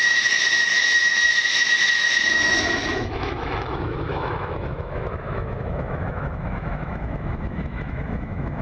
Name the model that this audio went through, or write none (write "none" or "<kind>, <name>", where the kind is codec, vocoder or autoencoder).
autoencoder, DAC-VAE